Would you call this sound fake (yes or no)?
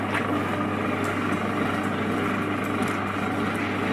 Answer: no